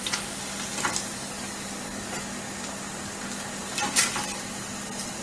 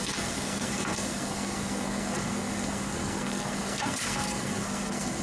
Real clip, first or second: first